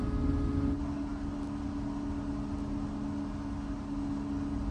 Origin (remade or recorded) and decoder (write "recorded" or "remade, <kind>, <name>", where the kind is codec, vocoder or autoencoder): recorded